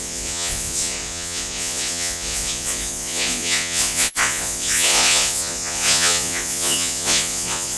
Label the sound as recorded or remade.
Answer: remade